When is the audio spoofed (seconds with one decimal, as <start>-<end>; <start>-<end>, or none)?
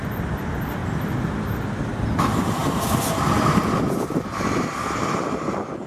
none